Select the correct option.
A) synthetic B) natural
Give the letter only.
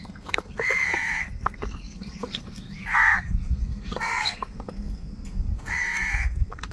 A